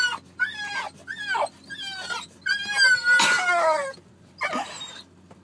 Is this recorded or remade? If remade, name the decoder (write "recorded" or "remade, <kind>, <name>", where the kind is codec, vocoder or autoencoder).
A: recorded